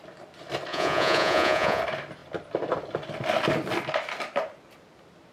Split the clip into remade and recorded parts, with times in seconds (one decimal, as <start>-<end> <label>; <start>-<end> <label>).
0.0-0.7 recorded; 0.7-1.8 remade; 1.8-5.3 recorded